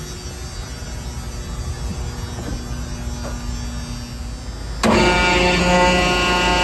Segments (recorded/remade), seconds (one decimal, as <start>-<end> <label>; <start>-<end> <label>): 0.0-6.6 recorded